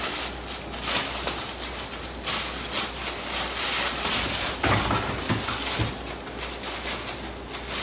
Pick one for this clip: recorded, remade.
recorded